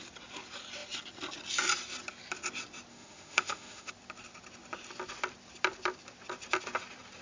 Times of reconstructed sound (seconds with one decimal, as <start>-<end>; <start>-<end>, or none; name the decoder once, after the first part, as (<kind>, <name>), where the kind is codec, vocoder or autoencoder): 2.9-3.9 (autoencoder, DAC-VAE)